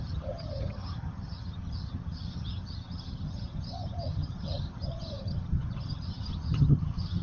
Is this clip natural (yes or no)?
no